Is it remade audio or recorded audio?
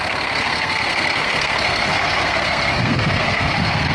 remade